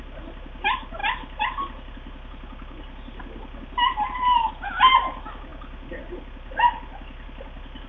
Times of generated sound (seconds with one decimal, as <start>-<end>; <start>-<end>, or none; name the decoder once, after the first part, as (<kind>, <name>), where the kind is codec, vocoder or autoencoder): none